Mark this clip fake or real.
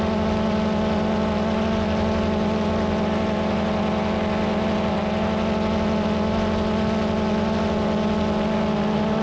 real